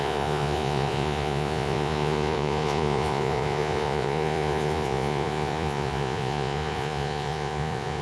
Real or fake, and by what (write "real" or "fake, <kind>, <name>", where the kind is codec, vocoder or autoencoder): fake, vocoder, Vocos